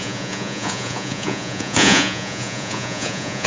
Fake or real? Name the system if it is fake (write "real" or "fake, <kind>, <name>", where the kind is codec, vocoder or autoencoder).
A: fake, vocoder, Vocos